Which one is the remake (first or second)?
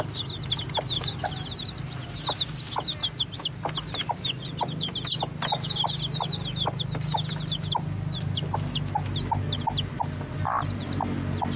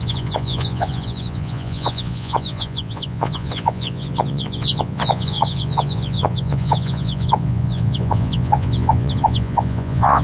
second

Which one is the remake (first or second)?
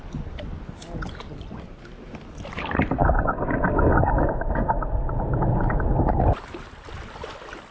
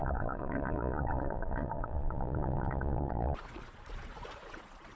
second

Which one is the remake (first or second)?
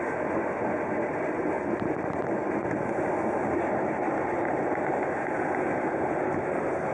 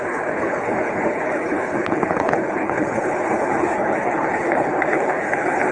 second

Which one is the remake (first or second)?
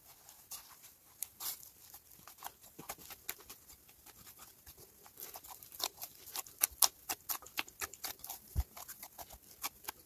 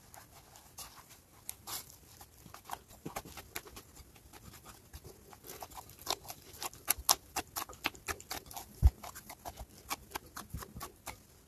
first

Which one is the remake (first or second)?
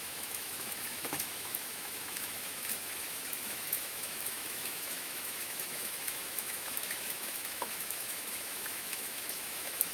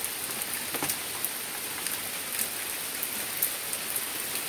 first